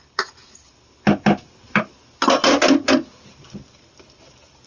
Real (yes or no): yes